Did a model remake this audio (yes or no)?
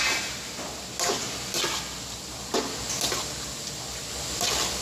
no